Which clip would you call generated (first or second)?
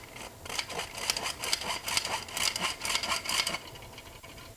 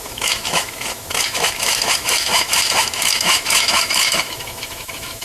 second